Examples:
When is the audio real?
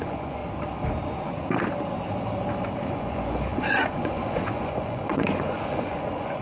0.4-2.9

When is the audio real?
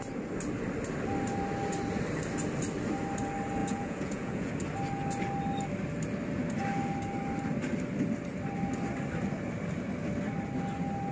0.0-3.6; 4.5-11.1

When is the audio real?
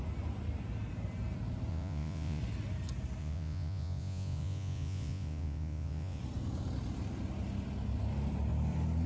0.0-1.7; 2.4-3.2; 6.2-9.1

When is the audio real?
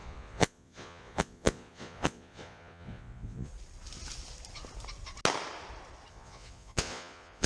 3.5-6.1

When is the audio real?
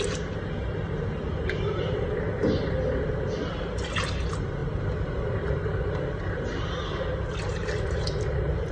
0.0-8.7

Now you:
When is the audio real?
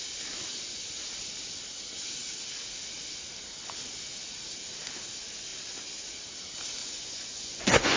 0.0-6.8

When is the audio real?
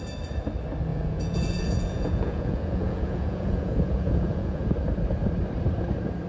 0.0-0.9; 4.7-6.3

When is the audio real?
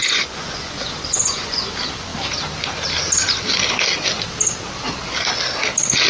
1.6-6.1